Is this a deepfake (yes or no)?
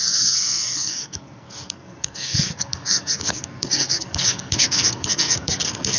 yes